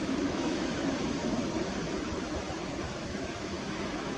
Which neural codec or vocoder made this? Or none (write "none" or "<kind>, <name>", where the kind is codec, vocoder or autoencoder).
autoencoder, DAC-VAE